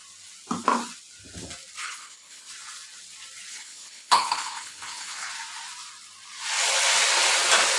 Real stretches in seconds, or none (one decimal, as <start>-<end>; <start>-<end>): 0.0-1.8; 2.5-3.5; 5.3-7.8